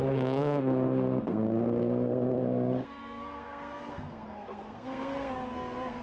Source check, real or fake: fake